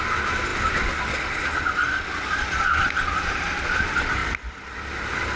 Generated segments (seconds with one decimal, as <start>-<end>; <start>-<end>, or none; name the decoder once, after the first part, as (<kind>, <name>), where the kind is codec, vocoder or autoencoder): none